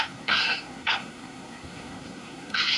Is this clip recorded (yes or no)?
no